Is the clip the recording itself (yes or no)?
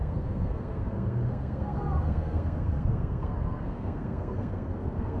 no